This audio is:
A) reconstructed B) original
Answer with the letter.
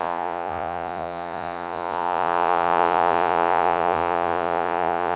A